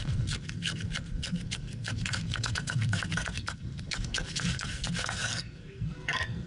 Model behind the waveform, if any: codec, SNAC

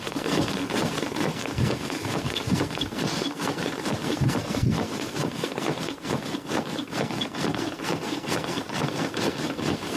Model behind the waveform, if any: codec, SNAC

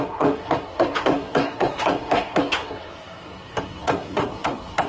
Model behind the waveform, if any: codec, SNAC